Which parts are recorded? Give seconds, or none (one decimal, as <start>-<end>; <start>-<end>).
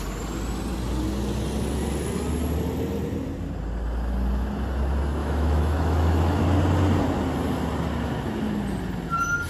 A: 0.0-5.2; 6.4-9.5